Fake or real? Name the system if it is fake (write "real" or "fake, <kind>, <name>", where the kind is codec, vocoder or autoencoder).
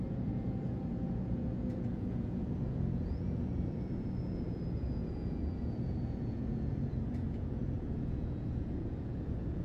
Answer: fake, vocoder, Vocos